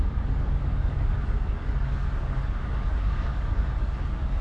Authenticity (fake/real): fake